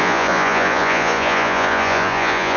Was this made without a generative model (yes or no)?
no